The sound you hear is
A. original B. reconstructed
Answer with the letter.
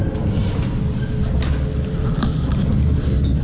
A